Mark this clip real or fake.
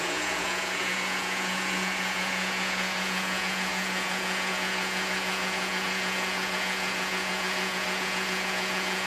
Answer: fake